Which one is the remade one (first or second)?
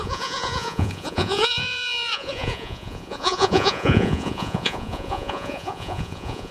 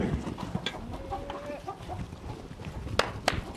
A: first